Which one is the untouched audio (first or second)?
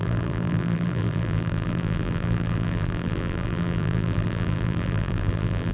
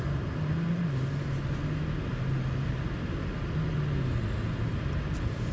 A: second